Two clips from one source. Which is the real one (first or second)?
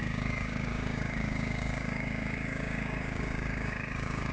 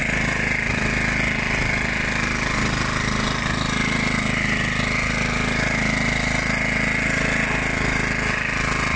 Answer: second